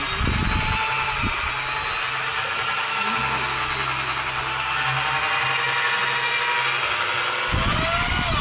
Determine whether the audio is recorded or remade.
recorded